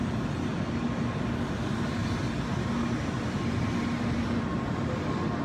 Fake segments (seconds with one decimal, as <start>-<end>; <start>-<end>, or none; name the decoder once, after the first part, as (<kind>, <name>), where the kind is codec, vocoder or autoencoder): none